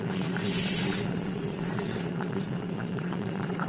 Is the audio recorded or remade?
remade